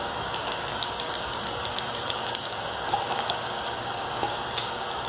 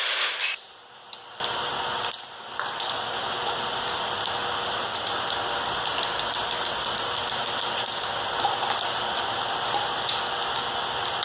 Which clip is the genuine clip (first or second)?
second